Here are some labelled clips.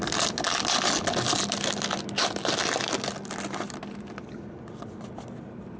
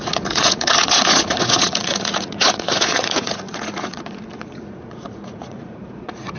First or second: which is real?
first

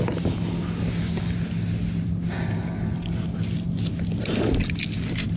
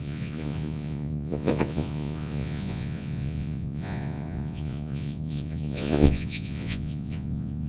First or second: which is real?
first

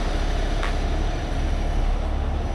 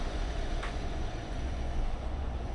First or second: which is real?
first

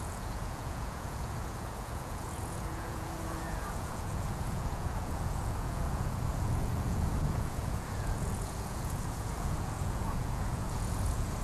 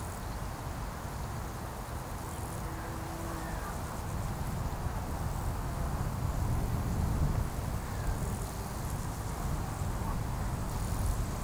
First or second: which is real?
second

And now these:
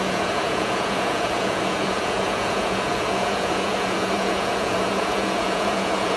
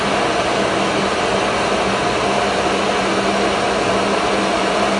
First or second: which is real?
second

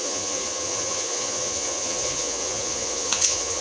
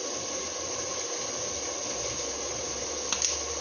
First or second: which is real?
second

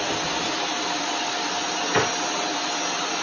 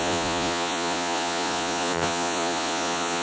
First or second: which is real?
first